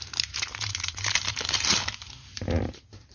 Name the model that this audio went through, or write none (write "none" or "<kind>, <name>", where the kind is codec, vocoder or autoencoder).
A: vocoder, BigVGAN v2